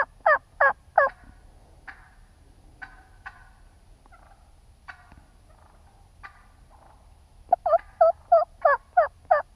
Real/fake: real